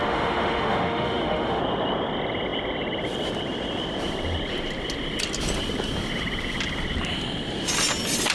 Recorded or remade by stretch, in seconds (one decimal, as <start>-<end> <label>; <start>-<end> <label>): 0.0-1.6 remade; 1.6-8.3 recorded